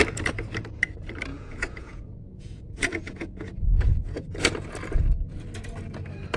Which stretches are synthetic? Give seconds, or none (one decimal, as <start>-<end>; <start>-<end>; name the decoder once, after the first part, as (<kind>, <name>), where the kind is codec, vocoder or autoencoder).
1.3-4.2 (vocoder, Vocos)